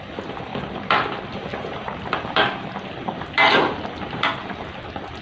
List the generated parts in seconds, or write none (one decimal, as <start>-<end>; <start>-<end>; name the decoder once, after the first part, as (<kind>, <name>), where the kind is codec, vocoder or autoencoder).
none